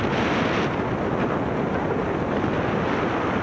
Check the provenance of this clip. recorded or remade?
recorded